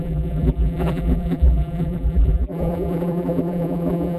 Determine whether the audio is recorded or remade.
remade